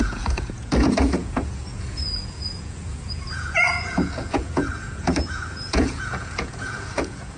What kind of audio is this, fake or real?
fake